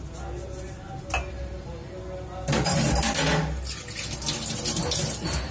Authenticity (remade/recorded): recorded